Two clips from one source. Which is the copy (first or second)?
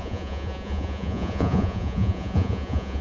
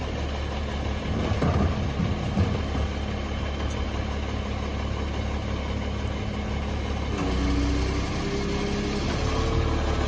first